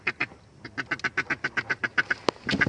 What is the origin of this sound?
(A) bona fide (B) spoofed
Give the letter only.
A